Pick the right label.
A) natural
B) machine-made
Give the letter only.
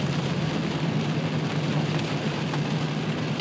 A